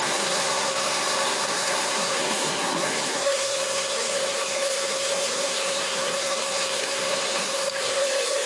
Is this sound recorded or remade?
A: remade